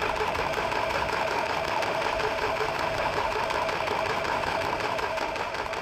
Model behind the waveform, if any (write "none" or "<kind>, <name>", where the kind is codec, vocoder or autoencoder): autoencoder, DAC-VAE